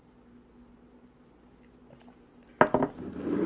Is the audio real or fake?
real